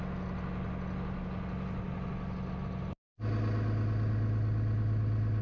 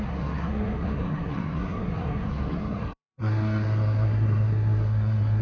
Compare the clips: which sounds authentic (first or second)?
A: first